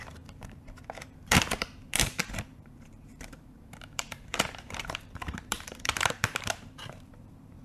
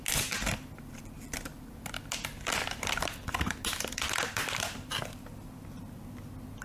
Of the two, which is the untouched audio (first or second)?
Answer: second